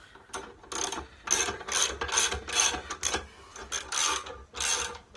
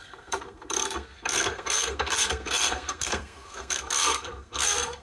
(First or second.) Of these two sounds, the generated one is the second